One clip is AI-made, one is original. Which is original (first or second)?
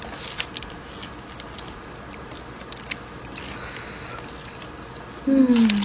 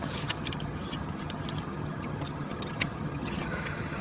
first